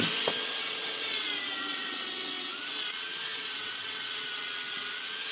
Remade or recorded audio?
remade